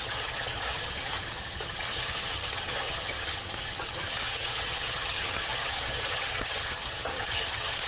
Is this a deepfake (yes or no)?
yes